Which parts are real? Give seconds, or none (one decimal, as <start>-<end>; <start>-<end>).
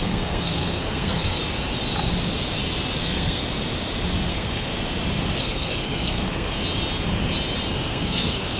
1.4-3.0; 3.4-4.3; 4.7-5.4; 6.6-7.7